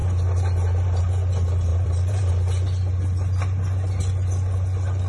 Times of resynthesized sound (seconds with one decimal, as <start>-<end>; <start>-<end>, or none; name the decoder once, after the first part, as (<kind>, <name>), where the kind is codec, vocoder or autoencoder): 1.7-2.3 (vocoder, BigVGAN v2)